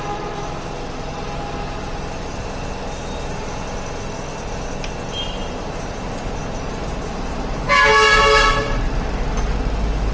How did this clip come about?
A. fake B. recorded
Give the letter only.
B